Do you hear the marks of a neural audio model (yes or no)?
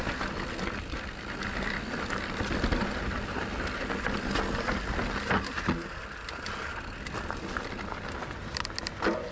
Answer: no